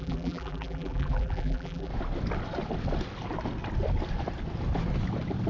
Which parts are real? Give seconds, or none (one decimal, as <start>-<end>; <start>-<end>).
1.9-5.5